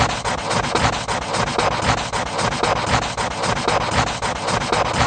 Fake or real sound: real